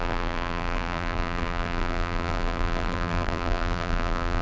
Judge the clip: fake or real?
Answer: fake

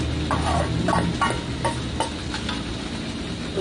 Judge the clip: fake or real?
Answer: real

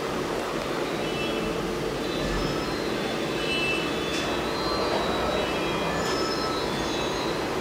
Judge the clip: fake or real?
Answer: real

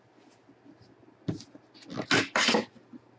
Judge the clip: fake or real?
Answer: real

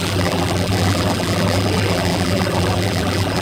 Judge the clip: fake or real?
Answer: fake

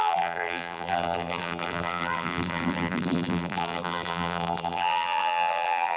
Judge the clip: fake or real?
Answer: fake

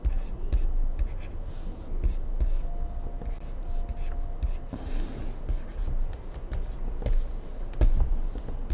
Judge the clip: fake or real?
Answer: real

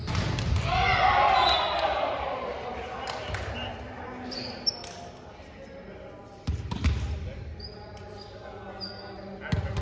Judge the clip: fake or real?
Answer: real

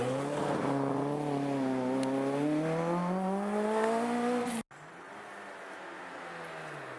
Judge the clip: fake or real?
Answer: real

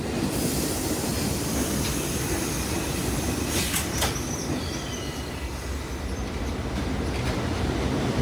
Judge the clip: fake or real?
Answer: real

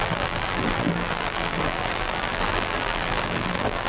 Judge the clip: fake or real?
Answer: fake